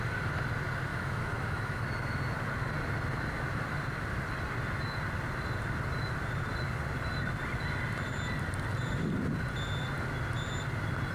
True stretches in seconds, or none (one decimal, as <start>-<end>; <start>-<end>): 0.0-0.9; 2.2-11.1